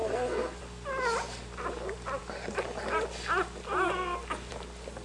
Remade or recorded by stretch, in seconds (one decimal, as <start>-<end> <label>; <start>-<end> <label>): 0.0-0.6 remade; 0.6-5.0 recorded